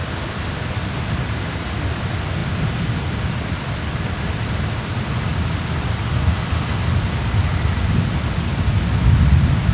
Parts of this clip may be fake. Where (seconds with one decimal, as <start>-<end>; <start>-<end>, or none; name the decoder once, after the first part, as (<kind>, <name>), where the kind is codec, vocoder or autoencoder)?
none